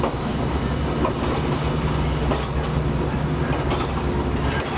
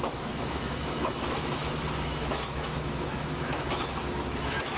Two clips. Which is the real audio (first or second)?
first